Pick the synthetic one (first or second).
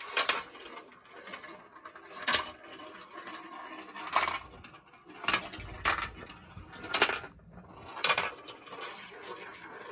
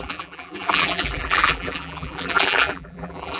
second